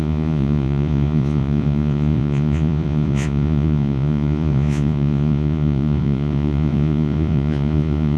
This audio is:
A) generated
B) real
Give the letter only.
A